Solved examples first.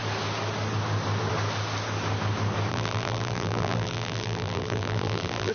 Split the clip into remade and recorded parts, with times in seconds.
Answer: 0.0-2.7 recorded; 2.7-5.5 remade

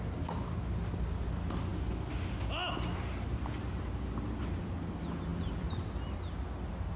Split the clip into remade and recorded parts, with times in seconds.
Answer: 0.0-5.3 recorded; 5.3-5.9 remade; 5.9-7.0 recorded

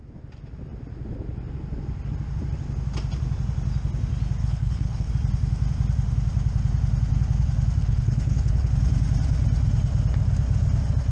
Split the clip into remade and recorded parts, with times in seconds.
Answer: 0.0-4.4 recorded; 4.4-5.1 remade; 5.1-7.8 recorded; 7.8-8.7 remade; 8.7-11.1 recorded

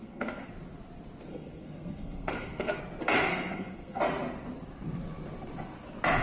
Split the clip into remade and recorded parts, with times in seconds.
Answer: 0.0-0.5 remade; 0.5-1.3 recorded; 1.3-2.8 remade; 2.8-3.3 recorded; 3.3-4.0 remade; 4.0-6.2 recorded

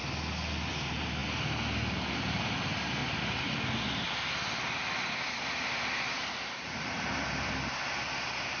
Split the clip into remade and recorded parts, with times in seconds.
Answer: 0.0-8.6 recorded

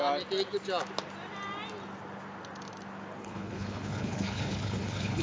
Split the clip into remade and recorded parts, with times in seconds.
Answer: 0.0-3.2 recorded; 3.2-5.2 remade